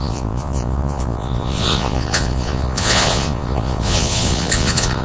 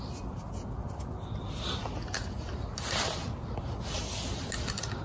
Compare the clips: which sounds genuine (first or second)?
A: second